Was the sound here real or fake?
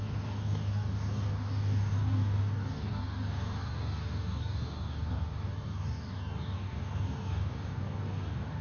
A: fake